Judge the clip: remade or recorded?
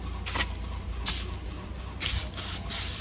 recorded